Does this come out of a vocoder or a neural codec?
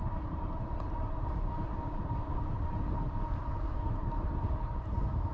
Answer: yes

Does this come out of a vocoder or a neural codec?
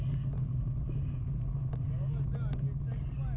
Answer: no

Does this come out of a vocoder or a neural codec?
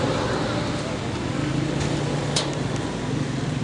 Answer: no